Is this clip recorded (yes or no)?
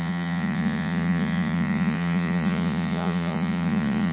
no